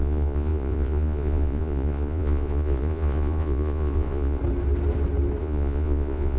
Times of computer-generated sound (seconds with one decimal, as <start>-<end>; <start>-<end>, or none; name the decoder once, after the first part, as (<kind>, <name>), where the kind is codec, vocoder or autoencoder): 0.0-4.4 (vocoder, Vocos); 5.4-6.4

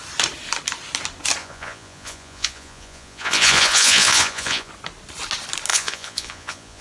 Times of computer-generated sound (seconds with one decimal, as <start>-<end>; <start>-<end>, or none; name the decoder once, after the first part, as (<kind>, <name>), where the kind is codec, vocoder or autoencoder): 1.4-4.7 (vocoder, Vocos); 5.7-6.8

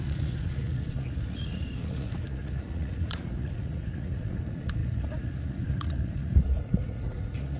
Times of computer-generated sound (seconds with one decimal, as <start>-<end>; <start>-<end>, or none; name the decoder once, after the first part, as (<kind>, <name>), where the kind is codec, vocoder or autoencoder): 0.0-7.6 (vocoder, Vocos)

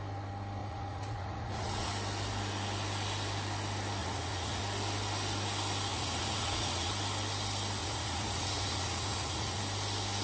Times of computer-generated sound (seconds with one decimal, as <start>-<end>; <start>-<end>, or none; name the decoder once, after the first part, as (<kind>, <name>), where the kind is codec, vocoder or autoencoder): 0.6-1.9 (vocoder, Vocos); 4.0-4.6; 5.9-6.9; 7.8-9.6

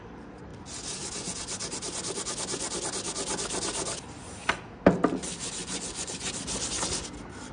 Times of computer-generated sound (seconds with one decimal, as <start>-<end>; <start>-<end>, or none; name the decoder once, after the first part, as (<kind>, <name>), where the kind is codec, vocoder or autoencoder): 5.6-6.3 (vocoder, Vocos)

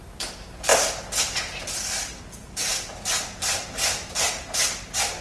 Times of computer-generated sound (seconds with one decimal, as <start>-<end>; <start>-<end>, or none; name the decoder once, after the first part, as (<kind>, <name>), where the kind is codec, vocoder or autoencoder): none

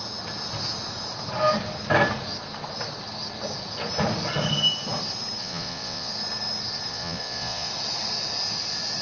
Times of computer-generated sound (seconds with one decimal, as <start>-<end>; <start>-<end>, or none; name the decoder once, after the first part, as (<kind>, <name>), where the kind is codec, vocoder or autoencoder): 5.4-6.1 (vocoder, Vocos); 6.9-7.7

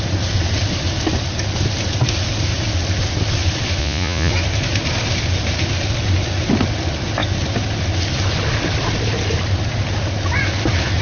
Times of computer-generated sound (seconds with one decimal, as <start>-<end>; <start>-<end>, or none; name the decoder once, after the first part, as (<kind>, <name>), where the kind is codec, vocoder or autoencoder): 3.8-4.3 (vocoder, Vocos)